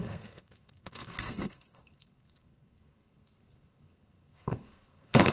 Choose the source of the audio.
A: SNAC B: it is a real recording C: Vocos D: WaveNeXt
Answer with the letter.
A